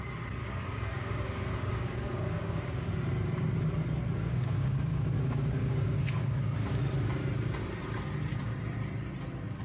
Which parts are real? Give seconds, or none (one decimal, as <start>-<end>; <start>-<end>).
0.0-0.4; 2.9-4.2; 6.8-9.6